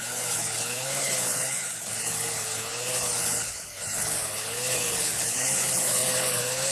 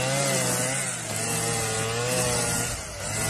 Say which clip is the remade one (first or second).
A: first